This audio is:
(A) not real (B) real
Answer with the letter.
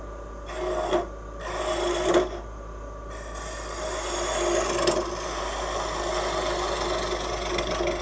B